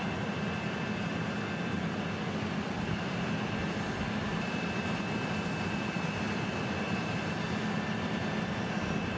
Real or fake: real